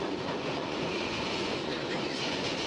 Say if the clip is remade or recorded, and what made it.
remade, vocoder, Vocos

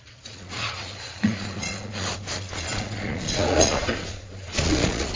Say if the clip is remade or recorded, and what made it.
remade, vocoder, Vocos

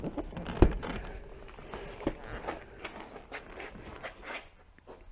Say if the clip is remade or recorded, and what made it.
recorded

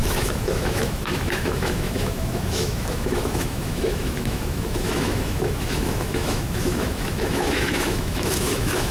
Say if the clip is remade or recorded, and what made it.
remade, autoencoder, DAC-VAE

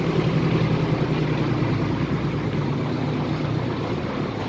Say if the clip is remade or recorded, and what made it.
recorded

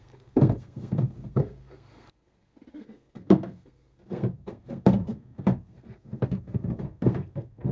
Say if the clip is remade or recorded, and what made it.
remade, codec, SNAC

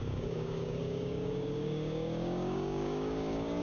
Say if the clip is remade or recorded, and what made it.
remade, codec, DAC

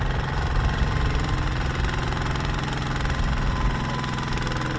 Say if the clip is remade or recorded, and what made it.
recorded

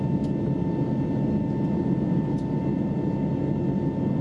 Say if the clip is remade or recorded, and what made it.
recorded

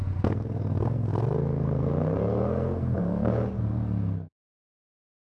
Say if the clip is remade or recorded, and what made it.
remade, codec, SNAC